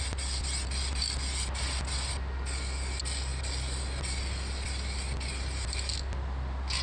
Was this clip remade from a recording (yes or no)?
no